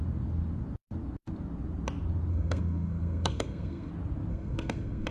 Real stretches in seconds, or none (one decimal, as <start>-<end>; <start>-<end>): 0.0-2.3; 3.9-4.3